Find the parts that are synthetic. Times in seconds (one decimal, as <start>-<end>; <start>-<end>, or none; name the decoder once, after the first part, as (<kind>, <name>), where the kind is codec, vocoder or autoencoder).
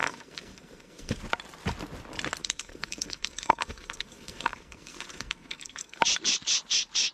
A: 0.0-1.2 (codec, SNAC); 2.4-6.0